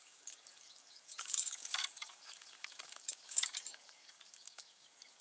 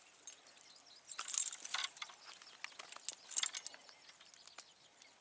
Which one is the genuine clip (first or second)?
second